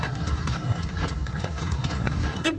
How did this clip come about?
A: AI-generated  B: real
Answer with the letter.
A